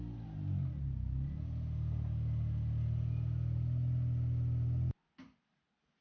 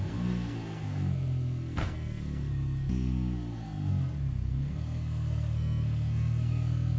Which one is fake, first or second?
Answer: second